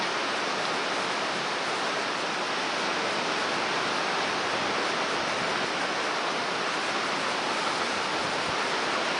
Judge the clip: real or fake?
real